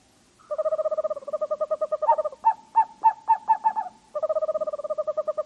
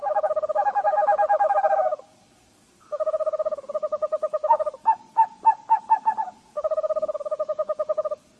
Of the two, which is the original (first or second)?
first